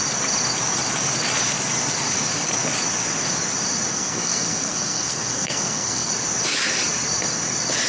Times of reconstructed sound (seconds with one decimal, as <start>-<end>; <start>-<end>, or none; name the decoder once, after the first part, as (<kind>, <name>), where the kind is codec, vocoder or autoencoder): 3.9-6.1 (codec, SNAC)